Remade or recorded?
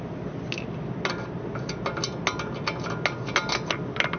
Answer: recorded